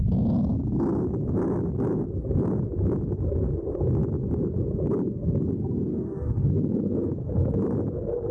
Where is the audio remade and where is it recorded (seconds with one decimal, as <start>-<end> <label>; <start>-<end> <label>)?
0.0-5.9 recorded; 5.9-7.1 remade; 7.1-8.3 recorded